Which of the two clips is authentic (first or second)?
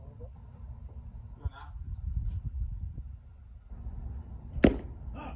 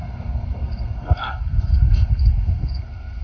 first